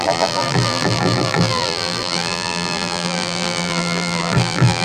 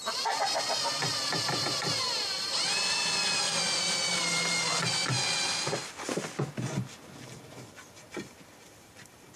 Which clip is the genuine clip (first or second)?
second